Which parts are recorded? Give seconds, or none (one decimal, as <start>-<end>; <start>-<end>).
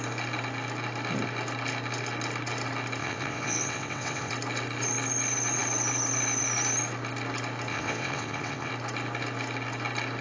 0.0-3.0; 4.3-7.7; 8.7-10.2